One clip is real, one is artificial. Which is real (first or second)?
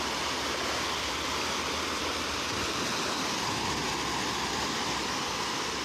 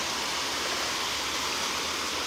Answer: first